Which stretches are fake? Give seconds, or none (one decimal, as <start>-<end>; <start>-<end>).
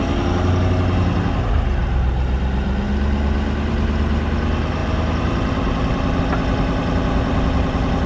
none